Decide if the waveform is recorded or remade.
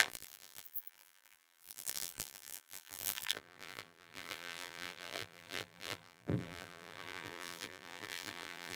remade